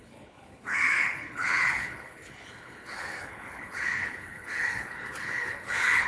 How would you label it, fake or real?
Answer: fake